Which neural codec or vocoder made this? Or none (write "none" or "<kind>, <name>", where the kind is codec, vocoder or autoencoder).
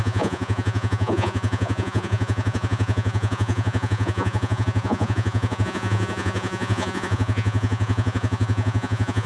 vocoder, Vocos